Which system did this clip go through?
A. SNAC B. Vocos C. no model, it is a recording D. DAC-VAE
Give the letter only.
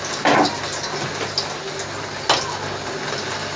C